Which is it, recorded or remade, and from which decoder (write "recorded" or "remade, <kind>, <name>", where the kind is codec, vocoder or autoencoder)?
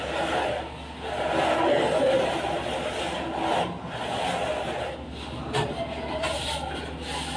recorded